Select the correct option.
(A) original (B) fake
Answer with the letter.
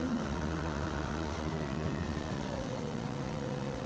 B